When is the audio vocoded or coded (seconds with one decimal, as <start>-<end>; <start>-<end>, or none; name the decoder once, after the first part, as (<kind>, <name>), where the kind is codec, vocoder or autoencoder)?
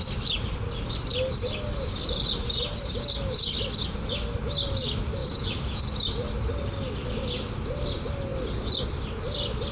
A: 5.2-5.8 (vocoder, Vocos)